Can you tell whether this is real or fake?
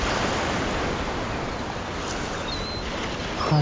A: real